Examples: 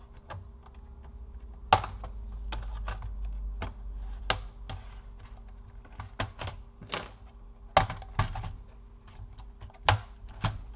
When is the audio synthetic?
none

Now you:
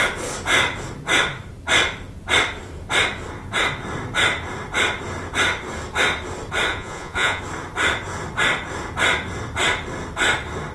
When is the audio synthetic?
6.7-7.4

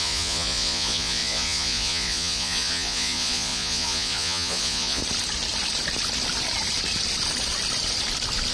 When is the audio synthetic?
0.0-5.0